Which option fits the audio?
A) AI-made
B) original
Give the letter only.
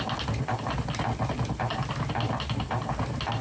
B